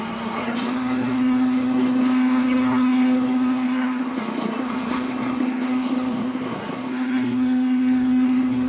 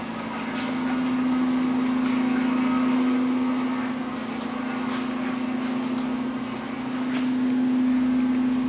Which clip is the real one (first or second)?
second